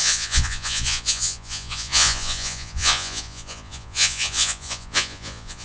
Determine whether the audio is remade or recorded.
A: remade